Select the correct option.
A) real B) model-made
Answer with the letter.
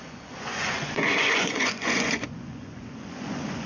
B